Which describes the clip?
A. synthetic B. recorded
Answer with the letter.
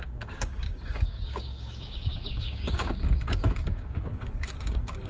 A